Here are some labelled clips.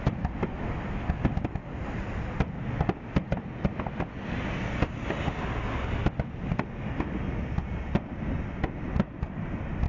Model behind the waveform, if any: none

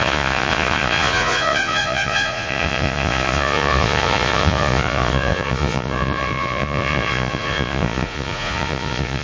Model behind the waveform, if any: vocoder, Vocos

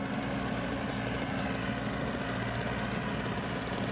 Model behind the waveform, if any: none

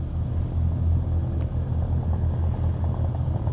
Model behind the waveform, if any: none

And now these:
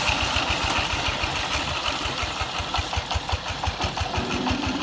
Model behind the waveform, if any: none